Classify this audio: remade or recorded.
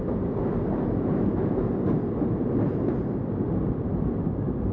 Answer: recorded